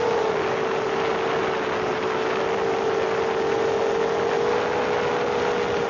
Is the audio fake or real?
real